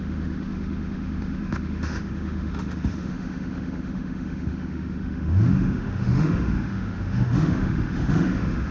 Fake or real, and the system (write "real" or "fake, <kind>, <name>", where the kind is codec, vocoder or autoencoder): fake, autoencoder, DAC-VAE